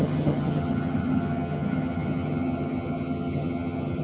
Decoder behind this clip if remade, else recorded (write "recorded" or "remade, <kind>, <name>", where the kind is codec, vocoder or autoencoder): remade, vocoder, HiFi-GAN